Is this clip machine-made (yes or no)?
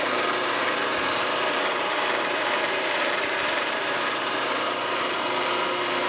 yes